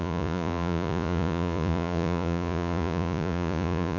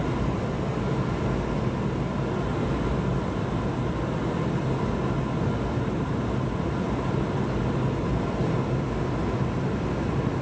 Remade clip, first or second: first